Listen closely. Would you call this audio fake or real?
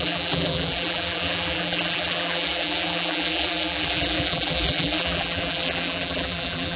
fake